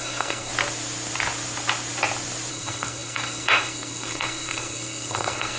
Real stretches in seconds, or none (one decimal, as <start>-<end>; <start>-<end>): 0.5-2.5